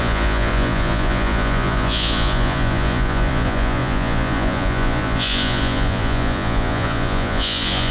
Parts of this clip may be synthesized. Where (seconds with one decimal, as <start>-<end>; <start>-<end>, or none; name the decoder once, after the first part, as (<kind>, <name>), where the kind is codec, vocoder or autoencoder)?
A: 0.0-7.9 (vocoder, Vocos)